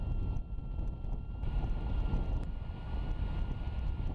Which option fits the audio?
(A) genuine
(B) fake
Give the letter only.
A